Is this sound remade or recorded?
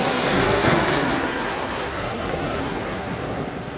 remade